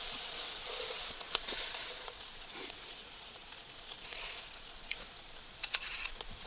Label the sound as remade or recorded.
remade